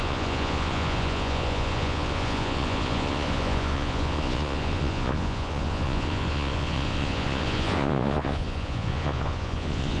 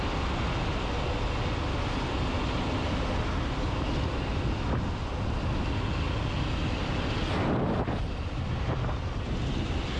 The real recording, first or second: second